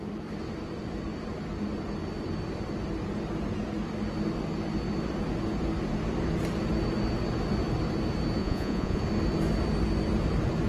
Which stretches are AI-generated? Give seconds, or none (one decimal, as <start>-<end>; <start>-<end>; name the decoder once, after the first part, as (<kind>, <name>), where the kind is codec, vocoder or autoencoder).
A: 8.4-9.0 (vocoder, Vocos)